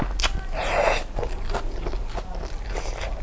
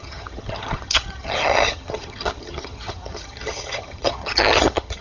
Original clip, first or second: first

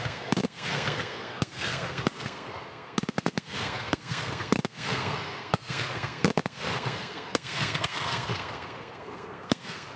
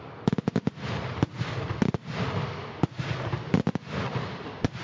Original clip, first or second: second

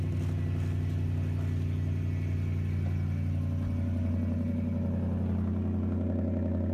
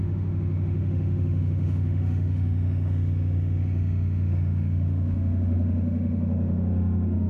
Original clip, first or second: first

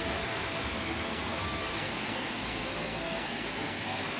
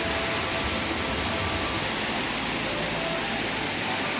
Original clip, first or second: second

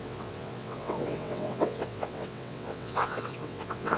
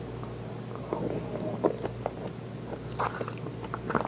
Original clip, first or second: second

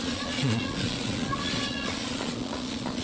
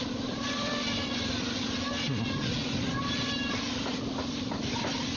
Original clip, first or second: second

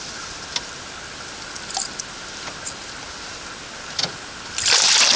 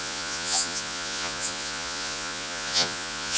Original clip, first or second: first